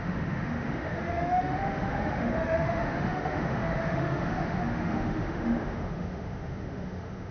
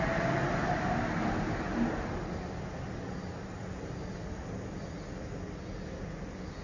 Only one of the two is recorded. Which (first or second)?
second